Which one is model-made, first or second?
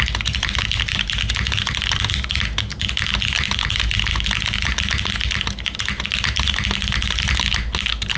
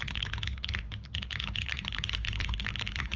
second